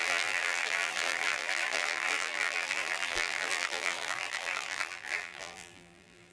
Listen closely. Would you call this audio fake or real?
fake